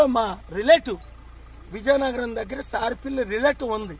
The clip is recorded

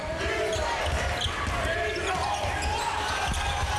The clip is recorded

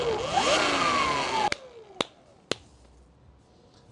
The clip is recorded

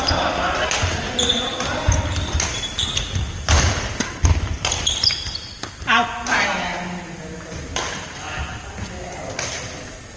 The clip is recorded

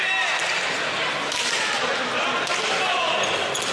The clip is recorded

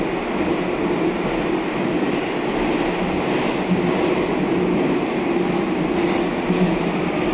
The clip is recorded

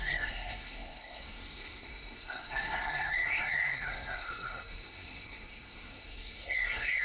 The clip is remade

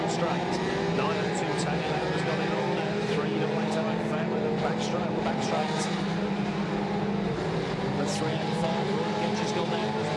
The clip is recorded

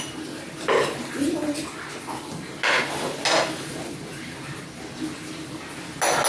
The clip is recorded